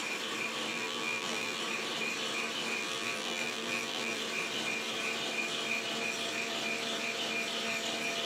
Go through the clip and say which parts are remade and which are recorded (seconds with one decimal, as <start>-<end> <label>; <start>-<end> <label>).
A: 0.0-0.7 recorded; 0.7-1.6 remade; 1.6-2.8 recorded; 2.8-4.2 remade; 4.2-8.3 recorded